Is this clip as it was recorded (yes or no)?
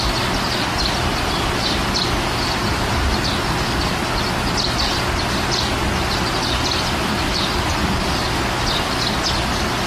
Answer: yes